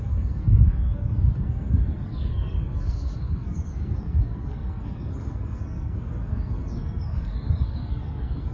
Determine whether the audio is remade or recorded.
remade